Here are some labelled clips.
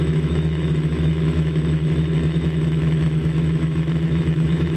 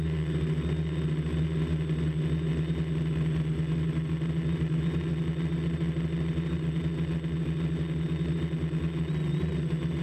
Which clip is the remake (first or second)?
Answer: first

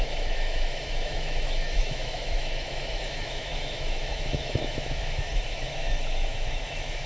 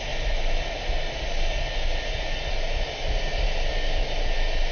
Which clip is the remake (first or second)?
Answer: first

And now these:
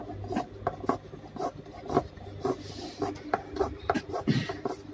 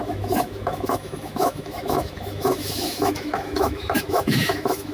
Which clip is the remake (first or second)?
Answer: second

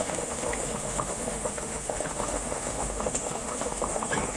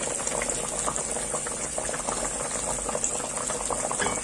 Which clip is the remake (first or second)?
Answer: first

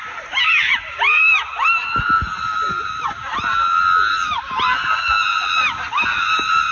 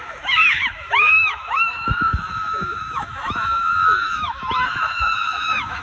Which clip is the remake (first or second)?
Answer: second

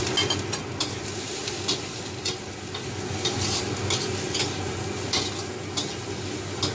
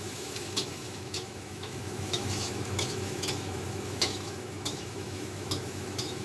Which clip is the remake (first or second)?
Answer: second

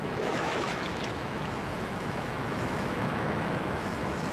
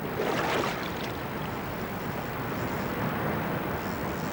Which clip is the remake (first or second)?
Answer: first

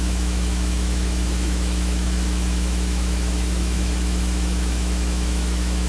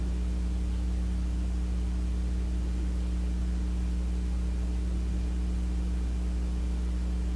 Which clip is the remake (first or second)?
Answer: first